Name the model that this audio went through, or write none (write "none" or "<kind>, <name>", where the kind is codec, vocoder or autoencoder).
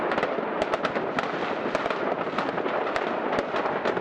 none